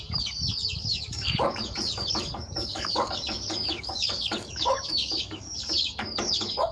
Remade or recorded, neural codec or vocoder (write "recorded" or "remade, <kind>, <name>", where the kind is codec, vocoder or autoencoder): remade, codec, DAC